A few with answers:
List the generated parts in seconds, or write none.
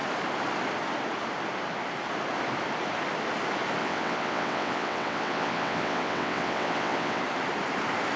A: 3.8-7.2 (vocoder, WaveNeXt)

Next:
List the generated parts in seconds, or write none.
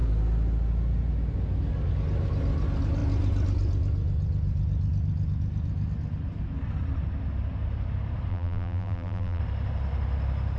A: 8.3-9.4 (vocoder, BigVGAN v2)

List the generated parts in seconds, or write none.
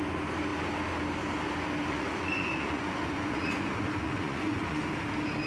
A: 1.9-4.8 (vocoder, Vocos)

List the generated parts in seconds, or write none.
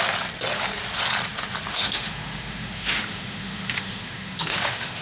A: 1.7-5.0 (autoencoder, DAC-VAE)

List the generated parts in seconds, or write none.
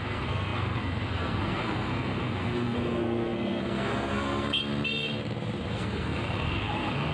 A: 0.0-4.6 (codec, SNAC); 5.7-7.1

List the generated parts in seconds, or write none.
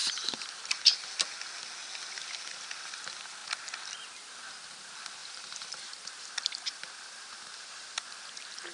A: 0.0-0.5 (vocoder, BigVGAN v2); 5.2-8.1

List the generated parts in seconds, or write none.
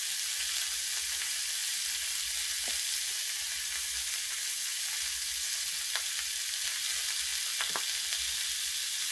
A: none